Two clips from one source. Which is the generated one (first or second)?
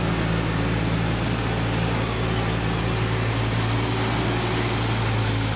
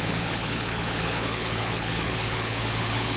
second